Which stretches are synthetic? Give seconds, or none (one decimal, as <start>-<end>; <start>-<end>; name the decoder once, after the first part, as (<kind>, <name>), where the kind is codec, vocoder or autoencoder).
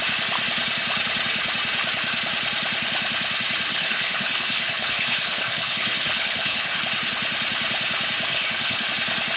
3.7-6.8 (codec, HILCodec); 8.3-8.9